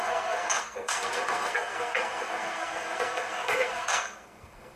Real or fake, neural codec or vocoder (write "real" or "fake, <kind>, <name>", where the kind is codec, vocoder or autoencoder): fake, codec, SNAC